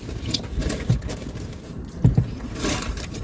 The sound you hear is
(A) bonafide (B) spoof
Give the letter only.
A